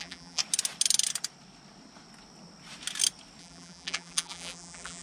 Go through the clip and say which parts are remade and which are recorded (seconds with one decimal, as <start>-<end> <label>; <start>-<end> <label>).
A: 0.0-0.4 remade; 0.4-3.4 recorded; 3.4-5.0 remade